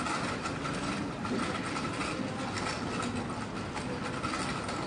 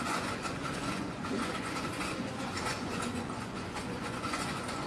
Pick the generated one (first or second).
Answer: second